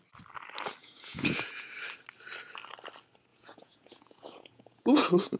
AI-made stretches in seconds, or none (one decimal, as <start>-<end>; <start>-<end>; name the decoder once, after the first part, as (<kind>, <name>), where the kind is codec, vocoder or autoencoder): 0.8-1.7 (vocoder, Vocos); 3.3-5.4